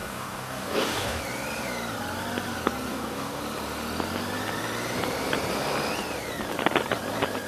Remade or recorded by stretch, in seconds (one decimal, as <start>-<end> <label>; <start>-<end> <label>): 0.0-1.2 remade; 1.2-2.9 recorded; 2.9-3.4 remade; 3.4-7.5 recorded

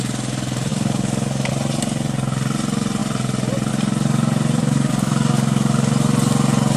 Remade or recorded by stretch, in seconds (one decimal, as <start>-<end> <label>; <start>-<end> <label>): 0.0-0.7 recorded; 0.7-1.5 remade; 1.5-4.6 recorded; 4.6-5.9 remade; 5.9-6.8 recorded

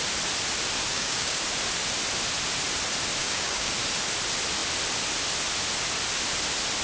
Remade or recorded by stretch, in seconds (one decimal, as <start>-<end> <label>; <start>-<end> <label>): 0.0-0.9 recorded; 0.9-1.4 remade; 1.4-3.2 recorded; 3.2-3.7 remade; 3.7-6.8 recorded

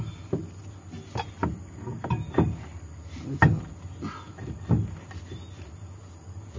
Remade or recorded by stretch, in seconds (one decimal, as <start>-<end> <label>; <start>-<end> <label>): 0.0-6.6 recorded

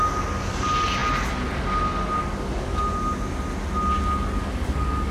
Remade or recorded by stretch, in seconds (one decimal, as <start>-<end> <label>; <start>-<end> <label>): 0.0-2.2 recorded; 2.2-2.8 remade; 2.8-4.4 recorded; 4.4-5.1 remade